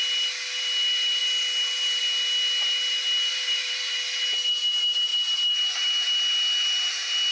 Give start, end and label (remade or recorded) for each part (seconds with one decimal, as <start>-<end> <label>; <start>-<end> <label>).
0.0-3.3 recorded; 3.3-3.9 remade; 3.9-7.3 recorded